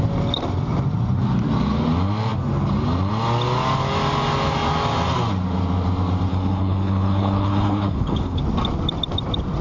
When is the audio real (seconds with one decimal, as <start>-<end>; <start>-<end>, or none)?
0.0-6.3; 8.4-9.6